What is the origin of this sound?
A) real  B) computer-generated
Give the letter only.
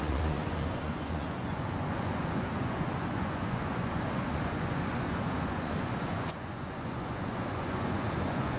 B